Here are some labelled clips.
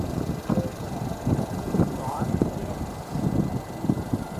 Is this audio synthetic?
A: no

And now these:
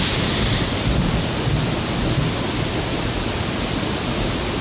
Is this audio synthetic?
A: no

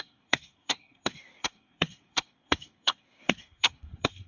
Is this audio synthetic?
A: yes